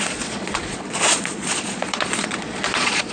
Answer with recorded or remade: remade